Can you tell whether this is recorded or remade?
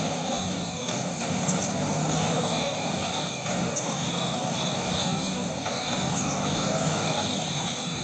remade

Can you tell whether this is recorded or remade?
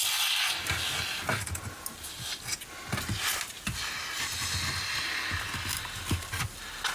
recorded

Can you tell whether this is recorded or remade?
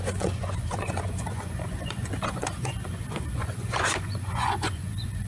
remade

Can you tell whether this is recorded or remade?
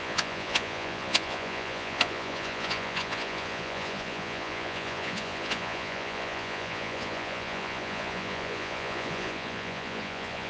remade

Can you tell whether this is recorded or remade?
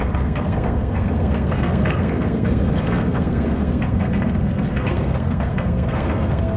remade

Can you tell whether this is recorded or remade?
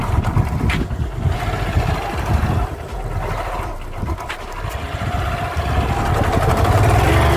recorded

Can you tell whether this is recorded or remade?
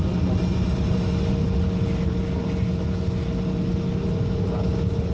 recorded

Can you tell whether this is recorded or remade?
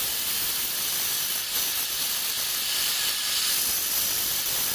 recorded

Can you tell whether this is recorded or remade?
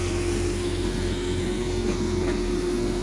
remade